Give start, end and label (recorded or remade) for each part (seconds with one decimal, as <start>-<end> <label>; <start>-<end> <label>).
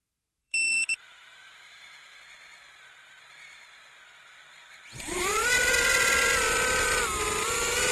0.0-2.2 remade; 2.2-7.9 recorded